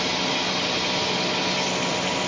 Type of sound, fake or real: real